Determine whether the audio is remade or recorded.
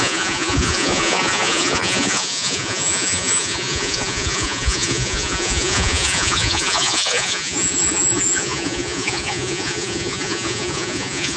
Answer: remade